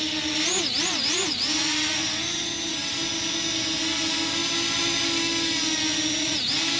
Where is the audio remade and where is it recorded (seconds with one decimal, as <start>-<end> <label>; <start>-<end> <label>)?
0.0-6.8 recorded